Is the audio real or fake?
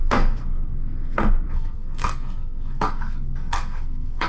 fake